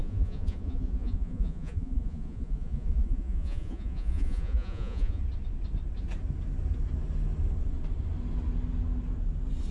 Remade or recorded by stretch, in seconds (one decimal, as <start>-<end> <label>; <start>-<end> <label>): 0.0-5.2 remade; 5.2-9.7 recorded